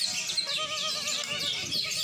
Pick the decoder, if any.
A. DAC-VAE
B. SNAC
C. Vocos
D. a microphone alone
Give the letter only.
D